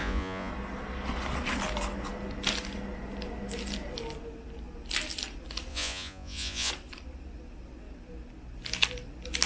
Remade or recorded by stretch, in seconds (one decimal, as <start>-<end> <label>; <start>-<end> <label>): 0.0-0.5 remade; 0.5-5.7 recorded; 5.7-6.7 remade; 6.7-9.5 recorded